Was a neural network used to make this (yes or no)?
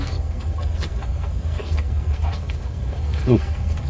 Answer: yes